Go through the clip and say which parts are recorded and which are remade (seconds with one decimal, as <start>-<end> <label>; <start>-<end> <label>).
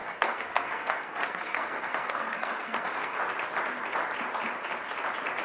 0.0-3.2 remade; 3.2-5.4 recorded